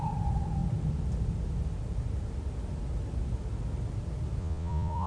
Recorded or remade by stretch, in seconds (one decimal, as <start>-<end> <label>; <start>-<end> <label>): 0.0-4.4 recorded; 4.4-5.1 remade